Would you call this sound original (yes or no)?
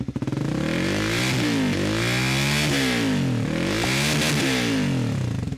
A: yes